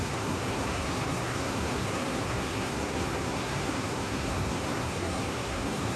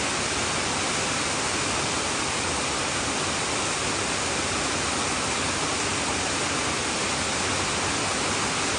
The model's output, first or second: first